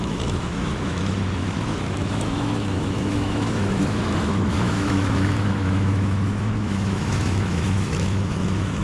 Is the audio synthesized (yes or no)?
yes